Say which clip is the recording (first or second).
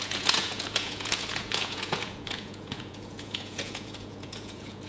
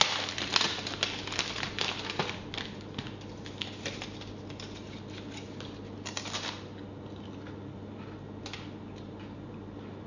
second